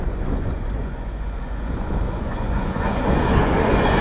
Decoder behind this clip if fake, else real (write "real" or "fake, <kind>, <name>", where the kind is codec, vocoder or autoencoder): fake, vocoder, Vocos